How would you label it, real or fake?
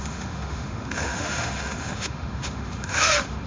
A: fake